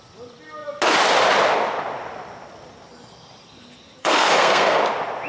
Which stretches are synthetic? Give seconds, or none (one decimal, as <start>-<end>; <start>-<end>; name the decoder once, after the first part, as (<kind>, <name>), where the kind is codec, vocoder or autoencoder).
4.0-4.8 (codec, SNAC)